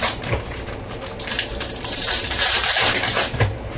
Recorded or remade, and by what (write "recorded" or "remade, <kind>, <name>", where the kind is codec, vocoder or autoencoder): remade, vocoder, BigVGAN v2